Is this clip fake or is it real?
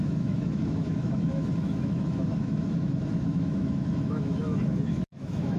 fake